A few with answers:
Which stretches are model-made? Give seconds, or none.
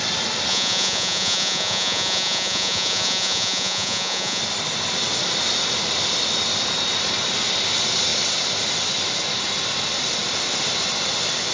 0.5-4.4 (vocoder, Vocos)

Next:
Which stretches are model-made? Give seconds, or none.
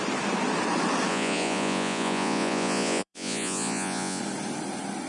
1.1-4.2 (vocoder, Vocos)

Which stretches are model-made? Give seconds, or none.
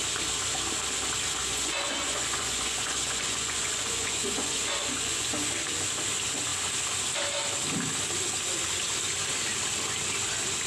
1.4-5.5 (vocoder, Vocos)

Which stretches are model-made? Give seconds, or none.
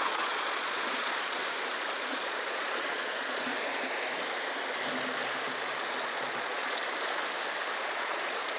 0.0-1.4 (vocoder, Vocos); 2.1-3.5; 6.0-6.8; 7.8-8.6